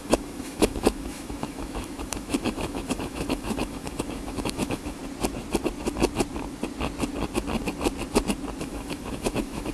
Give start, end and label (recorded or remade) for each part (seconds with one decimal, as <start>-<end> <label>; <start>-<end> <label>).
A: 0.0-5.0 remade; 5.0-8.6 recorded; 8.6-9.7 remade